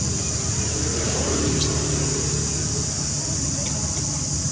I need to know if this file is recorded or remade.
recorded